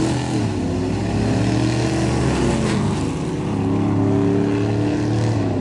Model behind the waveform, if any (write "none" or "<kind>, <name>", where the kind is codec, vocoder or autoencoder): none